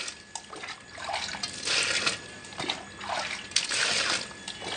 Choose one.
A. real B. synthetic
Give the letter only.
A